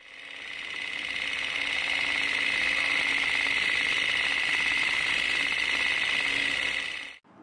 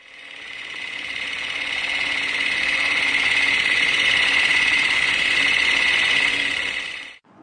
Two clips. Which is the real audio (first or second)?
first